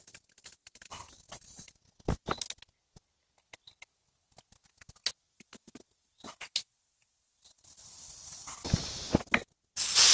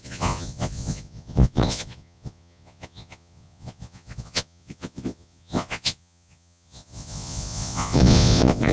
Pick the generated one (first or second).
second